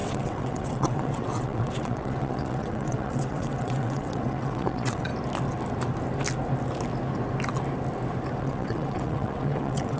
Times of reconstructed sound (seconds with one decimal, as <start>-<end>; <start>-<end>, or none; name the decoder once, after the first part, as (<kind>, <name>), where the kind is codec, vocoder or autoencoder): 0.0-5.1 (vocoder, WaveNeXt); 8.4-10.0